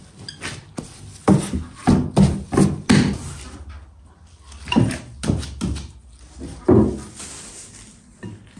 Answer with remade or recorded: recorded